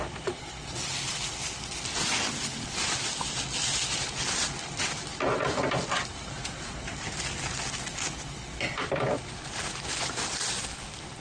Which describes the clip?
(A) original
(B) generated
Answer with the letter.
A